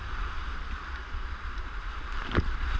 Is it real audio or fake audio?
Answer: real